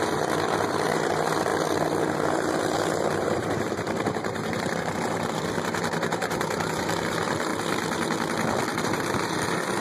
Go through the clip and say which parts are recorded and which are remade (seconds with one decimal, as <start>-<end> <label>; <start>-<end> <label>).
0.0-1.5 remade; 1.5-2.0 recorded; 2.0-7.5 remade; 7.5-8.8 recorded; 8.8-9.8 remade